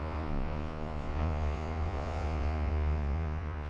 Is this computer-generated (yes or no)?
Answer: yes